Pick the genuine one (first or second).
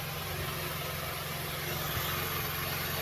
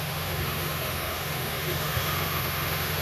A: first